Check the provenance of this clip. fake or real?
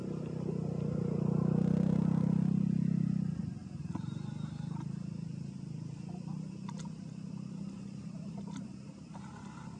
real